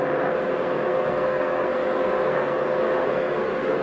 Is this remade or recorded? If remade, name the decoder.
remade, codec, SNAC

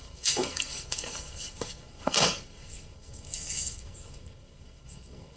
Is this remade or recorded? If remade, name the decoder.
remade, codec, SNAC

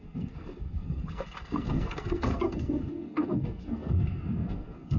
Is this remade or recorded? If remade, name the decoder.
remade, codec, SNAC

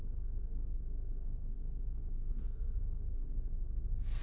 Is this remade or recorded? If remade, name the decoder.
remade, codec, SNAC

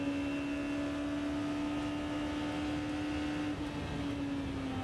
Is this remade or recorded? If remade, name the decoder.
recorded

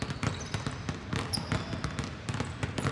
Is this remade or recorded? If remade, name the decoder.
recorded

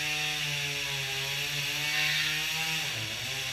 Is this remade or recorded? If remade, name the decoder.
recorded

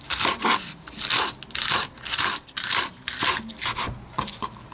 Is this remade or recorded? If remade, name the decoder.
recorded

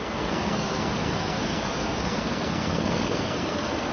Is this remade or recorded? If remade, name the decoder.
remade, codec, SNAC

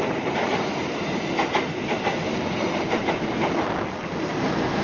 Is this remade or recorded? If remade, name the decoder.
recorded